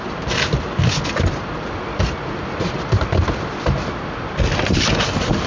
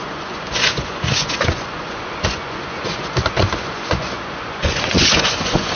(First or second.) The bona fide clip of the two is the first